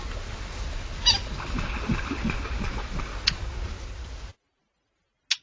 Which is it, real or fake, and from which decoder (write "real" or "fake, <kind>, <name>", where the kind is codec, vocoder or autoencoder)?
real